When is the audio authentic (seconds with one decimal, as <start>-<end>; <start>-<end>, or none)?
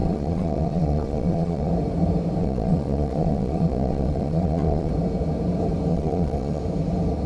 1.7-2.4; 4.9-5.9; 6.6-7.3